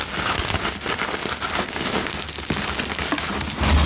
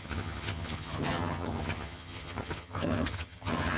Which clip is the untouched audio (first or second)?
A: first